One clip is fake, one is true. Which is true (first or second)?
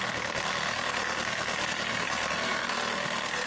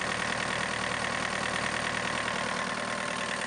second